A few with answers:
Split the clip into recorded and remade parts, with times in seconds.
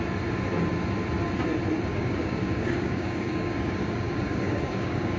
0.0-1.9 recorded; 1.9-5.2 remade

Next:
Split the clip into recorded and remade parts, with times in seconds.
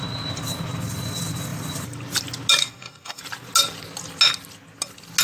0.0-2.6 recorded; 2.6-3.2 remade; 3.2-5.2 recorded